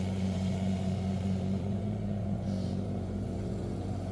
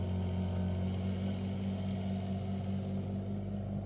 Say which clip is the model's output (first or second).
first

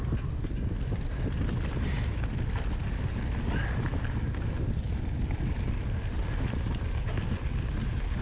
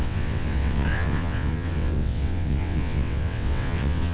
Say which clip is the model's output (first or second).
second